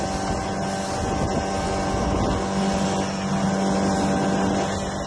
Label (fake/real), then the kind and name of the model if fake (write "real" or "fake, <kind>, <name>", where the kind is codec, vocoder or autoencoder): real